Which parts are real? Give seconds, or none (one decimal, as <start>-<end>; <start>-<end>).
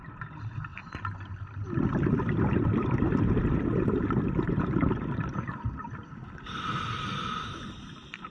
0.0-8.3